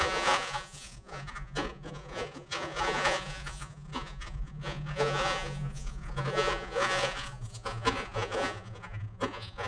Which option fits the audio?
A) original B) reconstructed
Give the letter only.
B